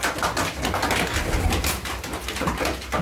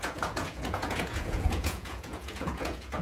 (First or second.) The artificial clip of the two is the second